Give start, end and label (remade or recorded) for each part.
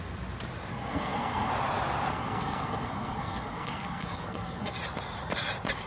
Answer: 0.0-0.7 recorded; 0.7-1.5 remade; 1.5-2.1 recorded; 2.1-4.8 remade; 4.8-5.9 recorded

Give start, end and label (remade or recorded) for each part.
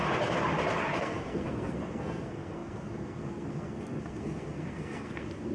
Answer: 0.0-1.0 recorded; 1.0-5.5 remade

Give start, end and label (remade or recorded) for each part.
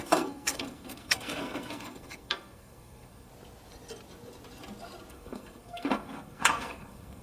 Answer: 0.0-3.3 remade; 3.3-5.1 recorded; 5.1-7.2 remade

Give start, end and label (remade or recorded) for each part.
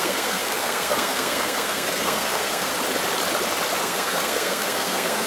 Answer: 0.0-2.7 remade; 2.7-3.8 recorded; 3.8-5.3 remade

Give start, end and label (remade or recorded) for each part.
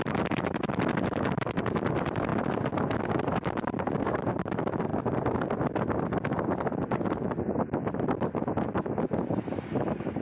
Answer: 0.0-10.2 recorded